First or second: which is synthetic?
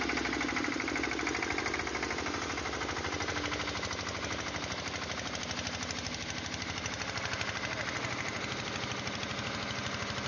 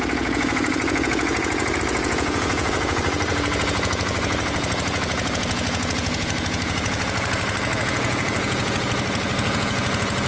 second